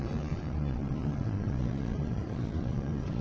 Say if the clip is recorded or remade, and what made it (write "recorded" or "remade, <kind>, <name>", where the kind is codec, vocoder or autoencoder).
remade, vocoder, Vocos